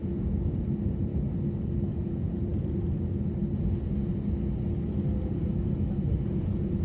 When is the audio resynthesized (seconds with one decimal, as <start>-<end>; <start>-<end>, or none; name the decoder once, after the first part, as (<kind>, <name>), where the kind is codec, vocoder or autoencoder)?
0.0-1.1 (vocoder, Vocos); 1.9-2.5; 6.2-6.8